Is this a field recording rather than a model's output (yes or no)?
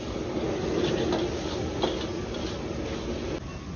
yes